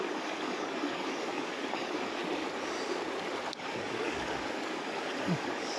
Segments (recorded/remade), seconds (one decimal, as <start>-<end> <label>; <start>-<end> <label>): 0.0-2.2 remade; 2.2-3.5 recorded; 3.5-5.8 remade